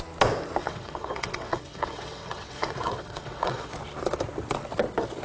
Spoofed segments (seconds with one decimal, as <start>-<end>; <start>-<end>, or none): 0.6-3.7